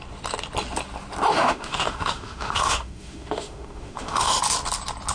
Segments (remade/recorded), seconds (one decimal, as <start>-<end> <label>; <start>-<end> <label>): 0.0-1.3 recorded; 1.3-4.4 remade; 4.4-5.1 recorded